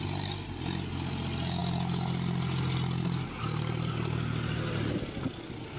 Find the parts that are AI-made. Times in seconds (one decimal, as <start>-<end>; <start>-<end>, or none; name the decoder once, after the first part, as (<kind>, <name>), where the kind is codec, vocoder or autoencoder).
none